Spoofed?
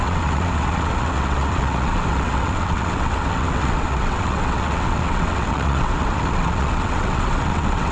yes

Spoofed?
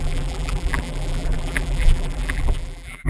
yes